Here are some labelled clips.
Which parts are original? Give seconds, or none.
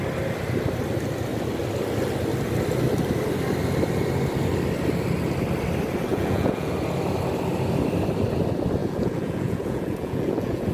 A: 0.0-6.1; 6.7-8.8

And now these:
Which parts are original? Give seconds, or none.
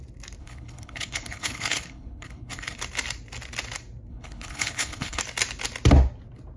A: 0.0-0.4; 2.8-4.1; 5.2-6.6